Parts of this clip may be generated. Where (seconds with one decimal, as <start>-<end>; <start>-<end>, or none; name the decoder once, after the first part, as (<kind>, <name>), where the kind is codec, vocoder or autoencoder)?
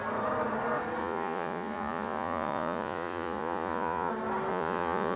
1.0-4.1 (vocoder, Vocos); 4.5-5.2